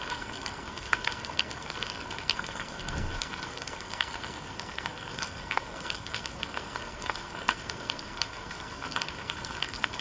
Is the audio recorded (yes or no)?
no